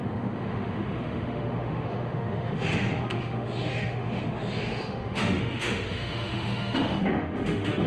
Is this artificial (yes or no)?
yes